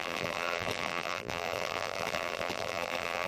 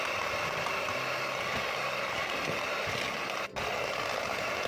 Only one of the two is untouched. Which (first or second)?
second